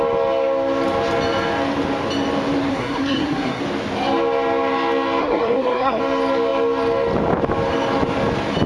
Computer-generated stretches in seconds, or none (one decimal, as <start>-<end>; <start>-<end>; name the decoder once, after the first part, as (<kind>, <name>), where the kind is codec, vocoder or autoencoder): 2.7-3.6 (codec, SNAC); 5.2-6.0